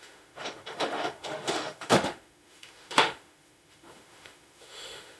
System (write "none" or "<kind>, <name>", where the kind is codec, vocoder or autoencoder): autoencoder, DAC-VAE